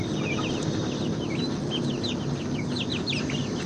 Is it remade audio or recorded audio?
recorded